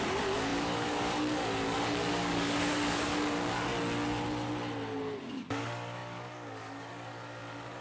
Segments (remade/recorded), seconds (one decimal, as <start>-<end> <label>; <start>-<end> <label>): 0.0-3.7 remade; 3.7-5.3 recorded; 5.3-7.8 remade